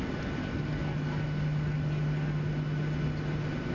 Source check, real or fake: real